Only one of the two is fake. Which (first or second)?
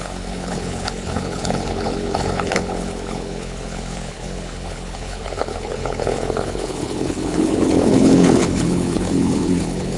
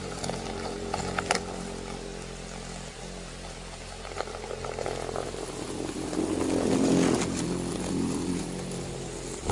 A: first